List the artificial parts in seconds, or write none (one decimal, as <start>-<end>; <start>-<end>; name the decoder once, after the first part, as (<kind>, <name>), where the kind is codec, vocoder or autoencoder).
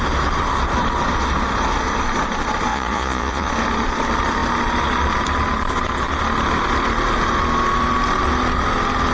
2.7-3.5 (vocoder, Vocos)